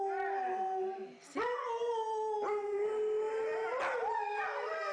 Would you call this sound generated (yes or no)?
no